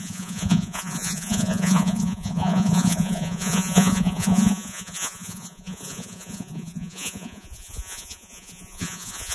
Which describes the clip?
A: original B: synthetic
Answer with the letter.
B